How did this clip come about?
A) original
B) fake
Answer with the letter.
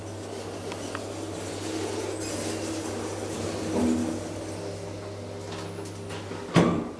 A